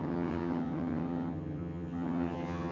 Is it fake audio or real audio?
fake